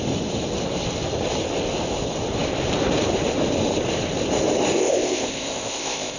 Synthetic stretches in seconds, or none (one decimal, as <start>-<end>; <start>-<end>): 4.8-6.2